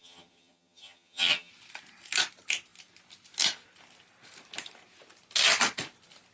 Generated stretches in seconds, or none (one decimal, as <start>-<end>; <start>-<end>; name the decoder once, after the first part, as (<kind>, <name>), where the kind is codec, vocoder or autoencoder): 0.0-1.5 (vocoder, HiFi-GAN)